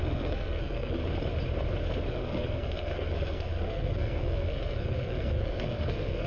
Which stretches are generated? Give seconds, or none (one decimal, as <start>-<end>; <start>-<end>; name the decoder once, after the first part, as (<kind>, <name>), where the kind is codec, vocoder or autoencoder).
0.0-1.0 (codec, SNAC); 2.1-6.3